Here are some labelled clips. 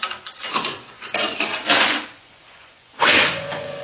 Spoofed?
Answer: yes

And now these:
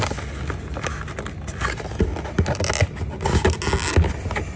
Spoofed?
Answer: no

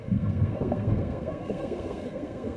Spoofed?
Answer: yes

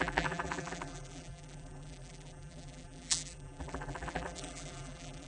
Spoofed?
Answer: yes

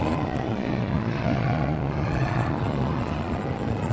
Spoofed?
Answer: yes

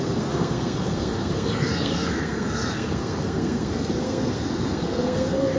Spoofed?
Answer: yes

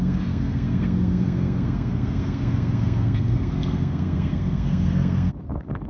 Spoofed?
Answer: yes